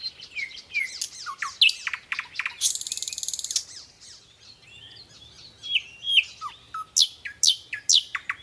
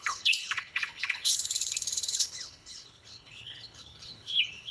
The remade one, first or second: second